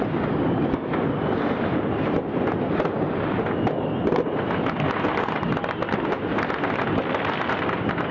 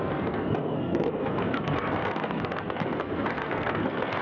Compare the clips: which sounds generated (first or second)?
second